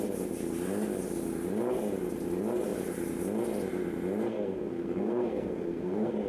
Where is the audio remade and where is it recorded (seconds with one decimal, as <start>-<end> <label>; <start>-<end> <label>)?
0.0-4.3 recorded; 4.3-6.3 remade